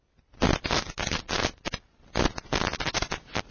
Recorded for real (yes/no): yes